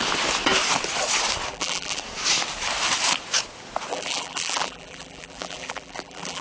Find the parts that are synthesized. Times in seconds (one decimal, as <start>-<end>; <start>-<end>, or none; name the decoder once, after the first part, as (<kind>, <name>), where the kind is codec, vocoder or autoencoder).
1.5-2.0 (vocoder, BigVGAN v2); 3.9-6.4